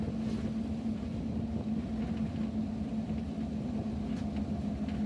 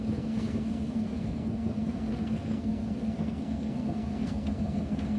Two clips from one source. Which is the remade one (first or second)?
second